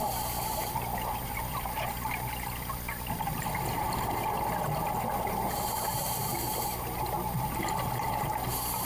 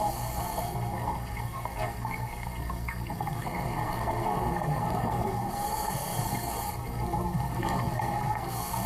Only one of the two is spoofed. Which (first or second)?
second